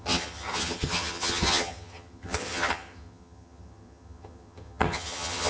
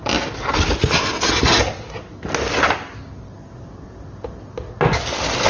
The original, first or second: second